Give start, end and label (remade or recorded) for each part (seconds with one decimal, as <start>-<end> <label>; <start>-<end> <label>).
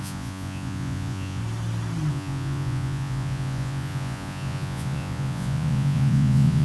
0.0-1.4 remade; 1.4-2.1 recorded; 2.1-6.6 remade